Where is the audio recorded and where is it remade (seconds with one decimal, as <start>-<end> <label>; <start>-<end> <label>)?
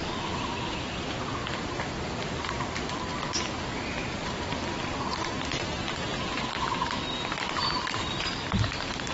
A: 0.0-1.4 recorded; 1.4-3.0 remade; 3.0-9.1 recorded